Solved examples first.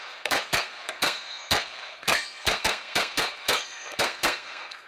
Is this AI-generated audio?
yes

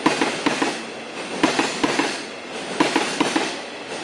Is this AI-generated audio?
no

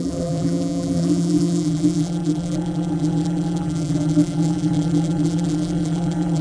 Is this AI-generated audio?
yes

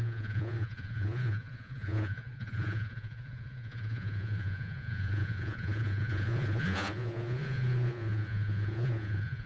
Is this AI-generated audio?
yes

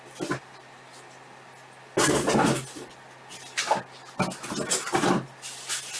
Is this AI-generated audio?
no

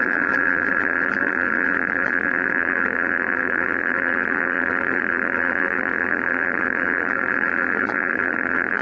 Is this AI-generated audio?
yes